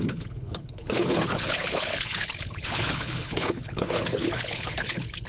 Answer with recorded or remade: remade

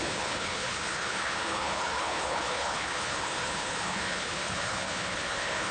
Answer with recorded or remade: remade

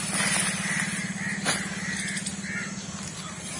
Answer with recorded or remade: recorded